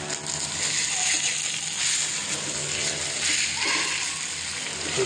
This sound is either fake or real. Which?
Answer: real